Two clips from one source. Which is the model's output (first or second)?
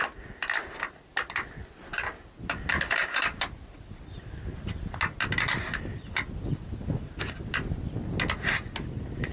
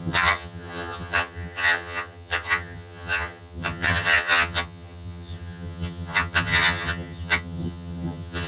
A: second